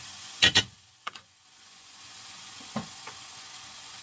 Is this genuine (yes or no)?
no